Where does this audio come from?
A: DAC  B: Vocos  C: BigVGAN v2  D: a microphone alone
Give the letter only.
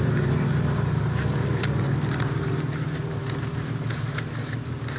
C